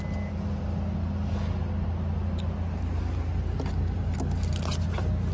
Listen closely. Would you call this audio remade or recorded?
recorded